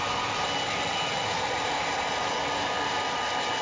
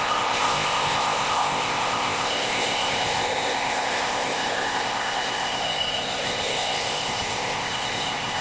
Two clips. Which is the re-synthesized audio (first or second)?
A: second